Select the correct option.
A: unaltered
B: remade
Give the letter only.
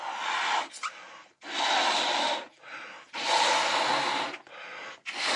A